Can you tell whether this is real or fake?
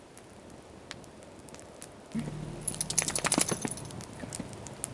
real